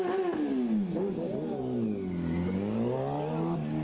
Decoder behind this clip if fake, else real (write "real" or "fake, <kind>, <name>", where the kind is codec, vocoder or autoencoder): real